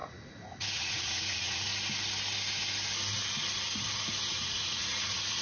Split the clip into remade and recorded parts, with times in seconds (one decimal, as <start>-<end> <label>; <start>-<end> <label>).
0.0-1.7 remade; 1.7-4.3 recorded; 4.3-5.4 remade